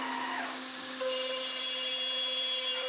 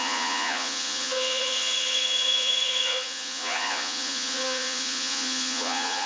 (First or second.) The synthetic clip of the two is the second